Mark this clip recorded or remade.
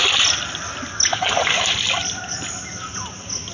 recorded